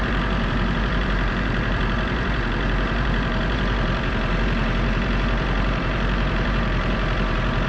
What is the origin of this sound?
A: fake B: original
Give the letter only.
A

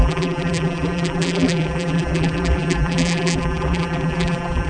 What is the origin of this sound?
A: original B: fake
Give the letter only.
B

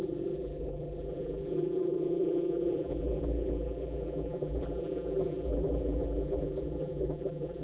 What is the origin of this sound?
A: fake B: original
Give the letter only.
A